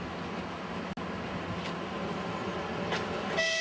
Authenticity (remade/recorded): recorded